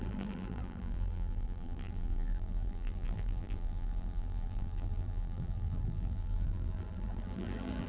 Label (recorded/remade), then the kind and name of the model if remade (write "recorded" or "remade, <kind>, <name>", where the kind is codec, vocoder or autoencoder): remade, vocoder, BigVGAN v2